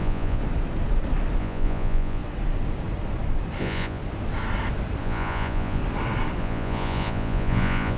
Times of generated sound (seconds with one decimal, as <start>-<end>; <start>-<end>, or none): 0.0-0.4; 1.4-2.2; 3.6-4.0; 5.0-5.8; 6.4-8.0